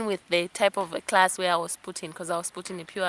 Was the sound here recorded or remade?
recorded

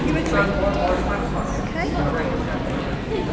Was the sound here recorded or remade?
recorded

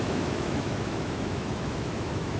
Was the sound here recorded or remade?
remade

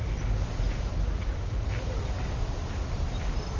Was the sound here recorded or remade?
recorded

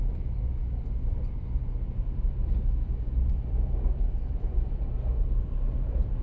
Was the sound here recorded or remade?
remade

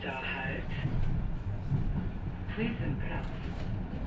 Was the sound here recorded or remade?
recorded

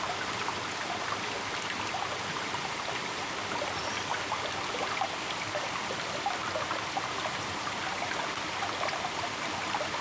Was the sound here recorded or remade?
recorded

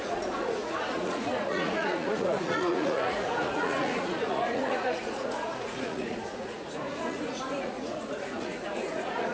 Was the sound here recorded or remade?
remade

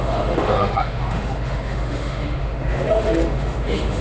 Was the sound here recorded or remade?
remade